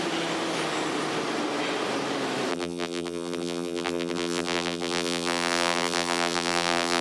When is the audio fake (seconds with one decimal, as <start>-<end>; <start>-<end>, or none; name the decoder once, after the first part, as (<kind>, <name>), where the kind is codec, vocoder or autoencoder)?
2.5-7.0 (vocoder, BigVGAN v2)